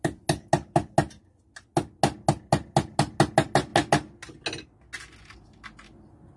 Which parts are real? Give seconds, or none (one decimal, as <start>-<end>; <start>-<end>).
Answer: 0.0-6.4